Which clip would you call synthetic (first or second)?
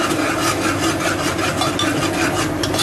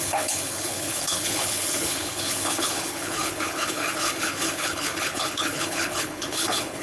second